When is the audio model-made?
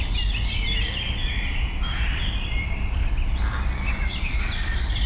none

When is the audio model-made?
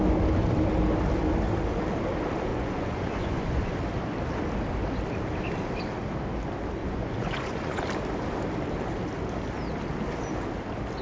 2.5-3.7 (vocoder, Vocos); 6.8-7.8